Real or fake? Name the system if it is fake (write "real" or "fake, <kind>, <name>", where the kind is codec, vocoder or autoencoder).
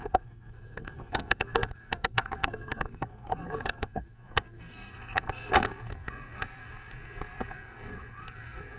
fake, codec, SNAC